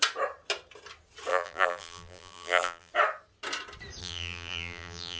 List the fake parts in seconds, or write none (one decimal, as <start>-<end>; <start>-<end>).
1.3-2.9; 4.0-5.2